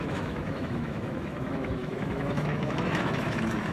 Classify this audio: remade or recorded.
remade